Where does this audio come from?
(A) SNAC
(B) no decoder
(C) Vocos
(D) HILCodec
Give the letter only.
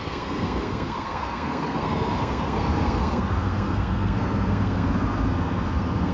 A